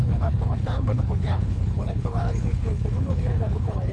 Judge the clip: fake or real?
fake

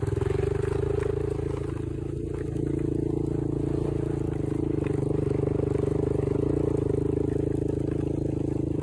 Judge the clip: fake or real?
real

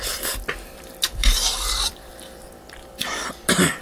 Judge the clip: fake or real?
fake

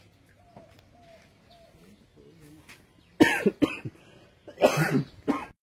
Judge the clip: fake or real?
real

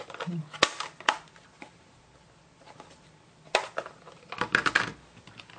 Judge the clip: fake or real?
real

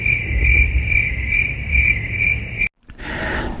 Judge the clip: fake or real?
real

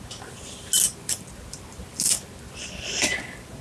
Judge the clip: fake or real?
real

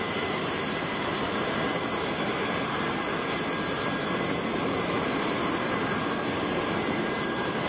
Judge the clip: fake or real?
fake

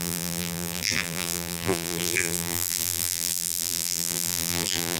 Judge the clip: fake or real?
fake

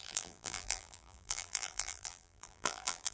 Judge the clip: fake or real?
fake